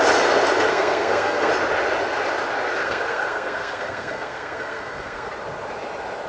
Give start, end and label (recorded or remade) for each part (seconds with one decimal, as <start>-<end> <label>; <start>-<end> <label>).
0.0-0.7 recorded; 0.7-1.5 remade; 1.5-2.8 recorded; 2.8-5.3 remade; 5.3-6.3 recorded